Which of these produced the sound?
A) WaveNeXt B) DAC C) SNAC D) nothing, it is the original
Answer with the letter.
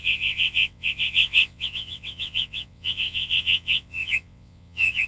A